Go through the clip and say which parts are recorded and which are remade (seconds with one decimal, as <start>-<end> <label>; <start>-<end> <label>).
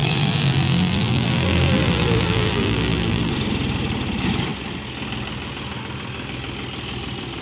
0.0-3.3 remade; 3.3-7.4 recorded